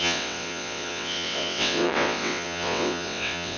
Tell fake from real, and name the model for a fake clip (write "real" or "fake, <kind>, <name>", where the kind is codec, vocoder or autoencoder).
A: fake, vocoder, WaveNeXt